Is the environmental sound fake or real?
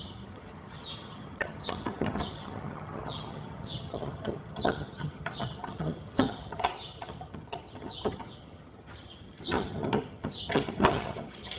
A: fake